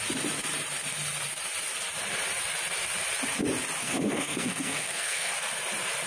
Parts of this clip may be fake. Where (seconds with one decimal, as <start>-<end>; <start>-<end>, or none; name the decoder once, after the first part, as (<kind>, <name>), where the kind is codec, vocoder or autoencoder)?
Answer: 3.8-5.3 (codec, SNAC)

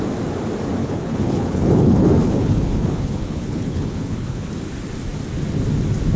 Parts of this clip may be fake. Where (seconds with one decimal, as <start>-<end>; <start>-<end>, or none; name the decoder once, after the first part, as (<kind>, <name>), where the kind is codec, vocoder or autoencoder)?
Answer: 0.8-4.5 (codec, HILCodec)

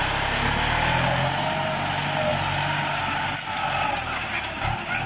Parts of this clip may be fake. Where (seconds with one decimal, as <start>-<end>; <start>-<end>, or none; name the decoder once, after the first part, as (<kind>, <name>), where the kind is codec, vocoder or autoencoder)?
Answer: none